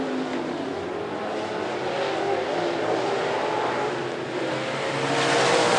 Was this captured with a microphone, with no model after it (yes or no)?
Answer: yes